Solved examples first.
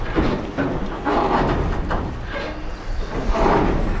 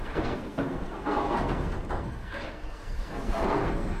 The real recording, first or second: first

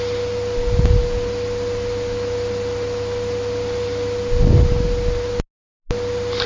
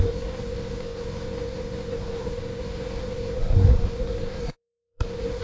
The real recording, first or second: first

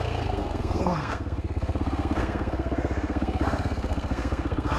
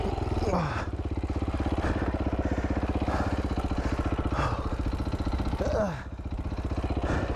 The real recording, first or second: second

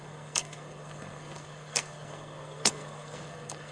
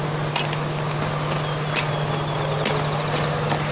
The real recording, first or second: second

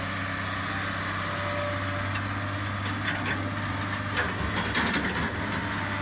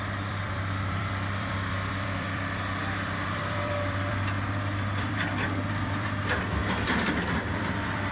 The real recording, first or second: first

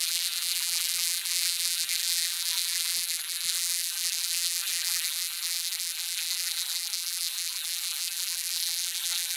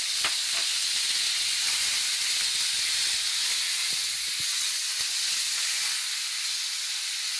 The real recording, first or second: second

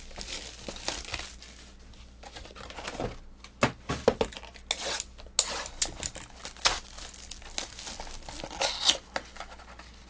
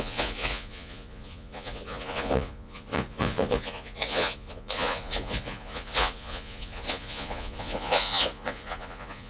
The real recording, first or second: first